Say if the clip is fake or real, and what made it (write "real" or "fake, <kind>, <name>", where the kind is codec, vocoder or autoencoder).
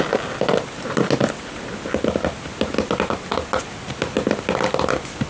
real